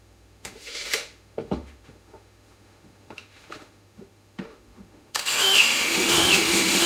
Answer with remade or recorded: remade